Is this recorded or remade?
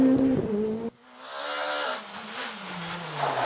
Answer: recorded